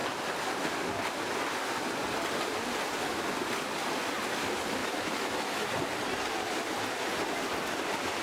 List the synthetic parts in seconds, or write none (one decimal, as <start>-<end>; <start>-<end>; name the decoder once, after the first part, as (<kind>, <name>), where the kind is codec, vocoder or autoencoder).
4.8-5.7 (autoencoder, DAC-VAE)